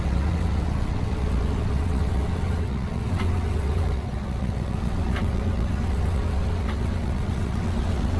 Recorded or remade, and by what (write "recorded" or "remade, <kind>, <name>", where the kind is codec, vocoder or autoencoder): remade, vocoder, WaveNeXt